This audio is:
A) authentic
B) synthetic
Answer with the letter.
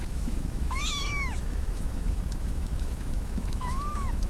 B